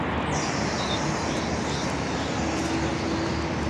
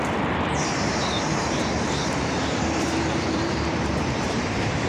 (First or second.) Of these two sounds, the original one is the first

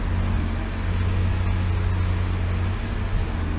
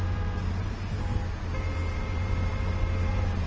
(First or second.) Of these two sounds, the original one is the first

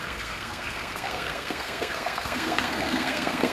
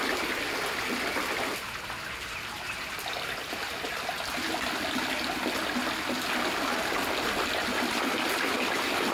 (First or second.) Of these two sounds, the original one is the second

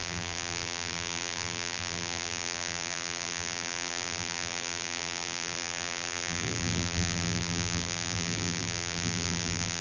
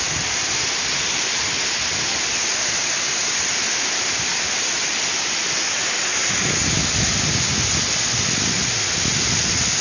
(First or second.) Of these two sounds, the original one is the second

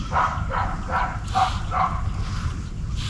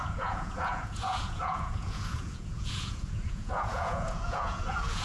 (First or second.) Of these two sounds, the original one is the first